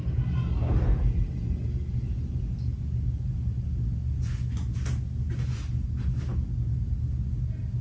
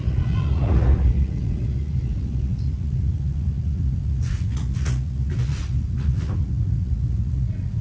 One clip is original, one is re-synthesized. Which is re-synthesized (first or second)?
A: second